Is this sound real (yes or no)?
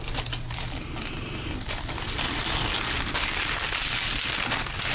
yes